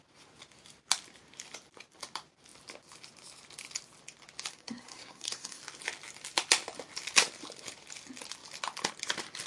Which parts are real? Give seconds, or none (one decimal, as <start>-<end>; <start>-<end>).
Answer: 0.0-4.5; 5.6-9.5